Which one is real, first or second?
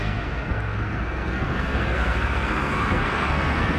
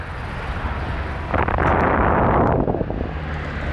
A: second